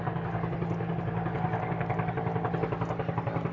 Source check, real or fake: real